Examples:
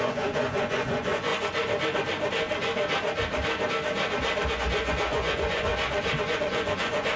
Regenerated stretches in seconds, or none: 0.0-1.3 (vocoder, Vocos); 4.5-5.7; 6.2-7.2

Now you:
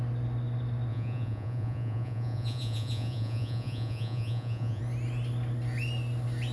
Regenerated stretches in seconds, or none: 0.9-4.8 (vocoder, Vocos)

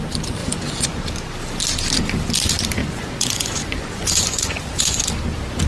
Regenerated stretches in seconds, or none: 0.4-1.0 (vocoder, Vocos); 2.8-5.0